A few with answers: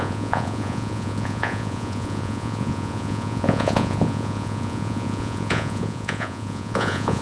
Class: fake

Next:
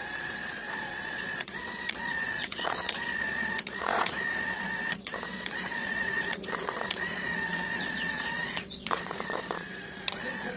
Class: fake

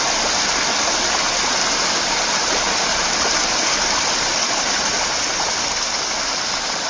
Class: real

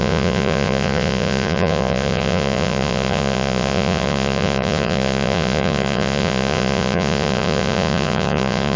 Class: fake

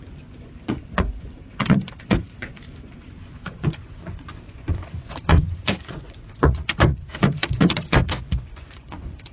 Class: fake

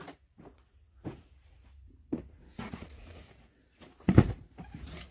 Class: fake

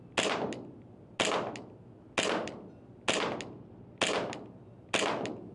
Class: real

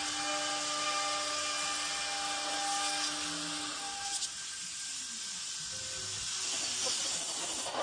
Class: real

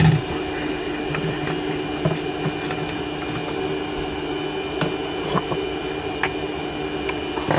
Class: real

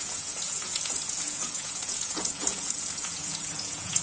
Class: fake